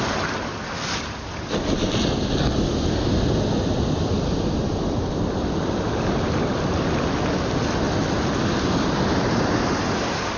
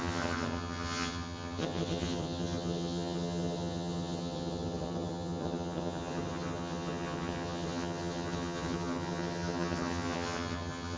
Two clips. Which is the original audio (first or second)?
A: first